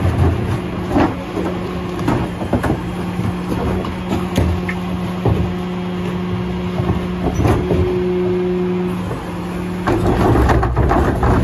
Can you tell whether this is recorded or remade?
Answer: recorded